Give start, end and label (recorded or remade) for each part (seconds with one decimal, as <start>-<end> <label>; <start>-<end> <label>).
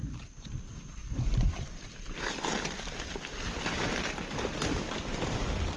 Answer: 0.0-5.8 recorded